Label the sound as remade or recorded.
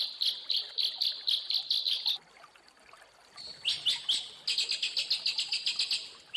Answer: recorded